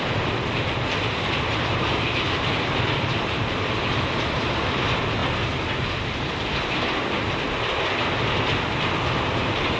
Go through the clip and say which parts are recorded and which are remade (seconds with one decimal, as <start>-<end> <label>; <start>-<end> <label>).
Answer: 0.0-5.2 remade; 5.2-7.9 recorded; 7.9-9.8 remade